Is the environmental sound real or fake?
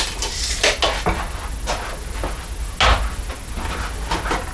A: real